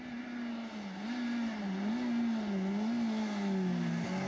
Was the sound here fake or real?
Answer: real